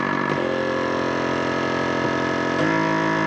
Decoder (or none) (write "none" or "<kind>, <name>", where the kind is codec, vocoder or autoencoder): none